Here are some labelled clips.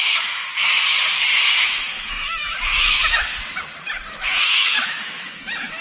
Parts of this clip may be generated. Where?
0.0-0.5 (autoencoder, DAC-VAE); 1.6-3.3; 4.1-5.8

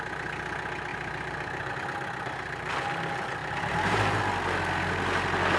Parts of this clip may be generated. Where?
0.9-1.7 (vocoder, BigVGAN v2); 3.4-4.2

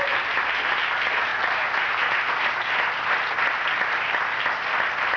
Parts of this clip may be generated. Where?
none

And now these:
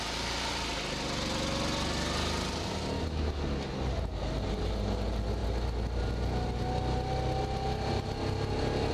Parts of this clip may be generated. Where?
none

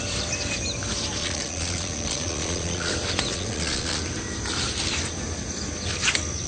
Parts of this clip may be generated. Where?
1.2-2.9 (vocoder, Vocos); 3.3-4.0

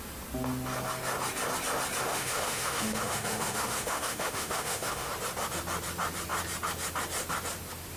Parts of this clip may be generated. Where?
2.1-5.1 (autoencoder, DAC-VAE)